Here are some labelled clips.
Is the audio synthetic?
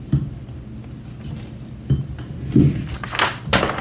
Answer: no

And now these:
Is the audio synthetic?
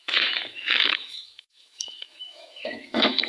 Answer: yes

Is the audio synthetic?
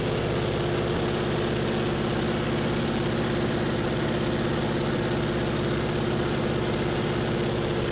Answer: no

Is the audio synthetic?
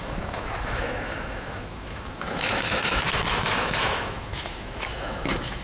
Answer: yes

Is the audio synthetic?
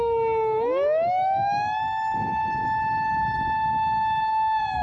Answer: yes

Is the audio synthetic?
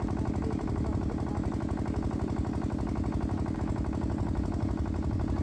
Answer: no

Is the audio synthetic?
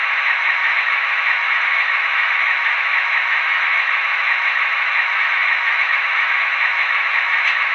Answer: yes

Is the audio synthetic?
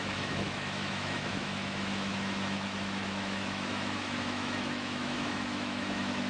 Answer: yes